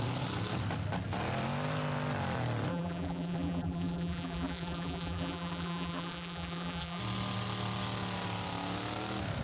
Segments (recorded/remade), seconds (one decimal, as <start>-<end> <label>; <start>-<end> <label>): 0.0-2.7 recorded; 2.7-7.0 remade; 7.0-9.4 recorded